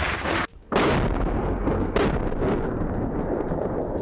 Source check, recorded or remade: recorded